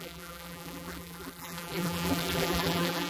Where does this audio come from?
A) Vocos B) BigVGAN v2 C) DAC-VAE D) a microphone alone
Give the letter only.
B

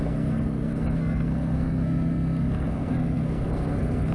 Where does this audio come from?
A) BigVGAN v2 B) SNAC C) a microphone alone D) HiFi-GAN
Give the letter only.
B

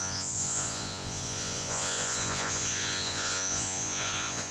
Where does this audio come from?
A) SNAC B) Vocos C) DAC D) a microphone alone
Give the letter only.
B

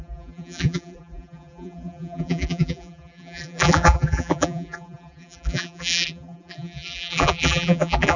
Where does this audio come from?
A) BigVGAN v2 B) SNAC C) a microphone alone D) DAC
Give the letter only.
A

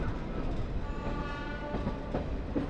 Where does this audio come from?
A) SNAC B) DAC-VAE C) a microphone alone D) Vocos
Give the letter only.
C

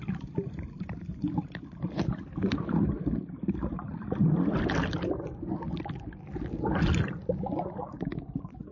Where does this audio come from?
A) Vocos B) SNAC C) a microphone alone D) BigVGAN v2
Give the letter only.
C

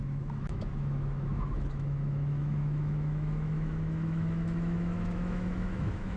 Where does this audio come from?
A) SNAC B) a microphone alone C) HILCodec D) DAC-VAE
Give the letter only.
D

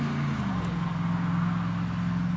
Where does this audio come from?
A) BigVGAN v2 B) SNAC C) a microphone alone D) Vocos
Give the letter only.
C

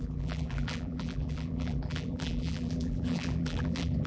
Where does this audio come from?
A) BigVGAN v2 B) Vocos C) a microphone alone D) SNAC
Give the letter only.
A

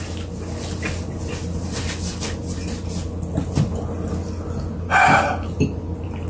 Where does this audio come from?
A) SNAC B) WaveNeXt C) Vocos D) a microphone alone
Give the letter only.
D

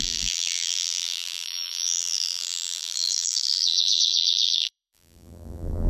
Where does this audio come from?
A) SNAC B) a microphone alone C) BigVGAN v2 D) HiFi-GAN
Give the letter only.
C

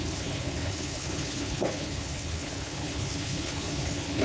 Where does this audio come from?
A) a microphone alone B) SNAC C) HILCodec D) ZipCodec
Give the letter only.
C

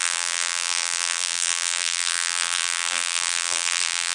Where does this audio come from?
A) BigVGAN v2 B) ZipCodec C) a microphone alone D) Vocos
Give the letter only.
A